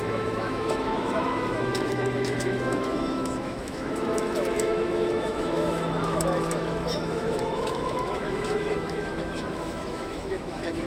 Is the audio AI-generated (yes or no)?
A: yes